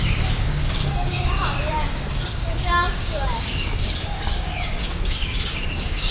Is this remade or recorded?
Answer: remade